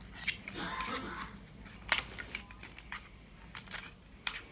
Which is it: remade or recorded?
recorded